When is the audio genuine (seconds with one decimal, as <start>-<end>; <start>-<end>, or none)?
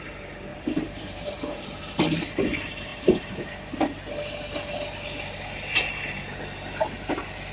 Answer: 0.0-0.5; 1.8-2.9; 3.5-7.5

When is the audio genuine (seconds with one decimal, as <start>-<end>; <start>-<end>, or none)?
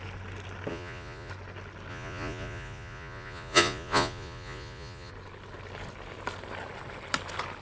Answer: 0.0-0.7; 1.3-1.9; 5.1-7.6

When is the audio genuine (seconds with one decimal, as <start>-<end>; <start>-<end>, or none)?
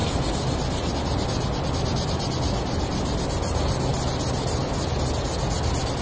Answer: 0.0-6.0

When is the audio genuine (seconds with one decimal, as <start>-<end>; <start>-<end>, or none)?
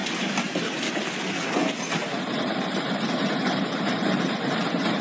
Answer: 0.9-2.0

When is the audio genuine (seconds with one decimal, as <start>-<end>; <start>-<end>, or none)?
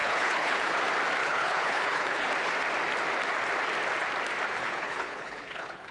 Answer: 0.7-1.2; 2.3-4.6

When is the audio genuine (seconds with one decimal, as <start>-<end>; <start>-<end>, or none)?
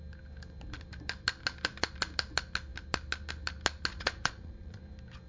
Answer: 0.0-3.9; 4.8-5.3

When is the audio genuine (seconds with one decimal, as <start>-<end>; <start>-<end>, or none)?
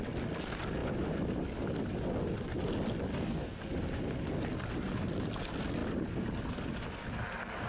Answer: 0.0-3.1; 3.6-7.7